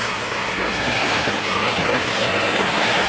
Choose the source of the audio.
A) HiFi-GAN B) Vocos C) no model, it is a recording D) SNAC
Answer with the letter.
D